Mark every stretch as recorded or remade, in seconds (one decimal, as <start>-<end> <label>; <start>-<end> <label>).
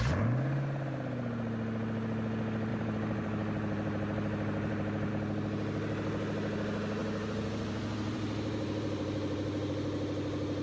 0.0-2.7 recorded; 2.7-5.1 remade; 5.1-7.0 recorded; 7.0-9.7 remade; 9.7-10.6 recorded